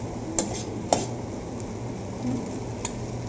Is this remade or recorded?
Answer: recorded